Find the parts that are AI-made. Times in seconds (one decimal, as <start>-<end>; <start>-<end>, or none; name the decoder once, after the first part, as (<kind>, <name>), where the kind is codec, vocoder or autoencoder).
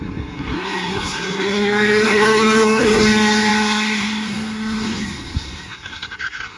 0.0-6.6 (codec, SNAC)